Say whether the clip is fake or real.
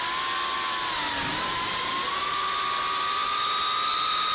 real